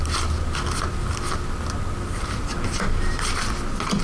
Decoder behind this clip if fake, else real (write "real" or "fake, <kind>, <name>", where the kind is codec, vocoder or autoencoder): real